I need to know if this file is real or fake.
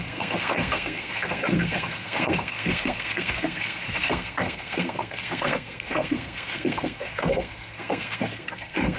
fake